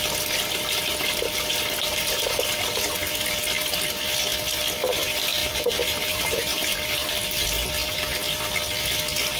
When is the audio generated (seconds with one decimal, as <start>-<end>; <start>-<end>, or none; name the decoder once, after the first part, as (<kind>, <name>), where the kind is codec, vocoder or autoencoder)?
1.9-2.9 (vocoder, BigVGAN v2); 5.4-7.1